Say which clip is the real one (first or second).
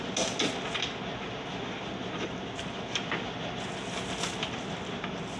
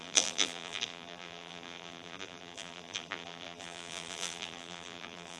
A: first